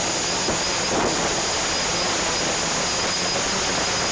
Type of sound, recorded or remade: recorded